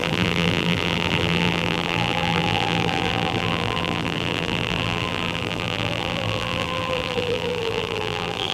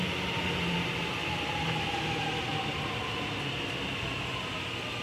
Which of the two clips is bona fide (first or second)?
second